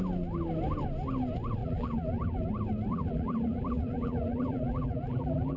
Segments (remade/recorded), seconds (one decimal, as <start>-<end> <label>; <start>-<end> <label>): 0.0-1.6 recorded; 1.6-2.5 remade; 2.5-2.9 recorded; 2.9-5.6 remade